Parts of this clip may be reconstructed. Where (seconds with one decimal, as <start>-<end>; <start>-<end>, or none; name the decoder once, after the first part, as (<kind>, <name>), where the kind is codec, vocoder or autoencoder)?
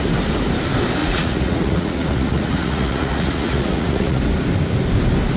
1.0-4.2 (vocoder, Vocos)